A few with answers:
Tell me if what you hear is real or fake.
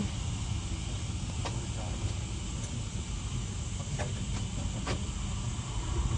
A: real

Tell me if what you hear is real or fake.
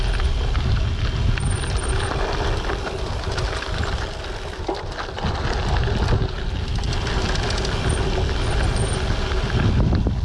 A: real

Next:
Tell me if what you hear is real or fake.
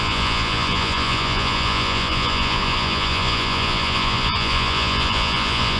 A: fake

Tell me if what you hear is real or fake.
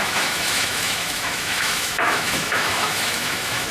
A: fake